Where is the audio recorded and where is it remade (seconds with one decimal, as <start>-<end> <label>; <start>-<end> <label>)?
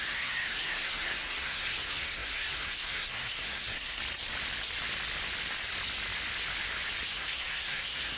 0.0-4.0 remade; 4.0-7.1 recorded; 7.1-8.2 remade